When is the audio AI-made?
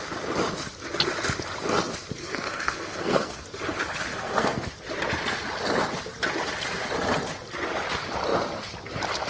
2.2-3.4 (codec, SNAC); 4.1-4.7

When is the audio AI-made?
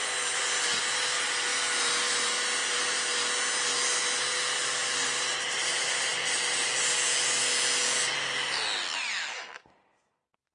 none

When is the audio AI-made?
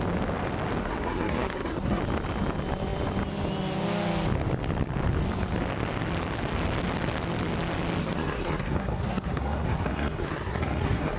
0.8-2.0 (codec, SNAC); 8.0-11.2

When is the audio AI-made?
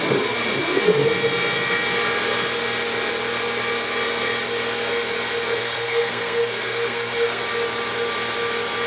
5.6-7.4 (codec, SNAC)